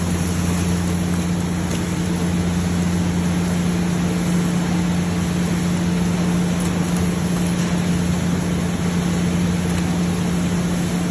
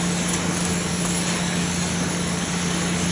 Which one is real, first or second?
first